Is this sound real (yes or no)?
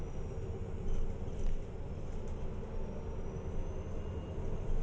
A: yes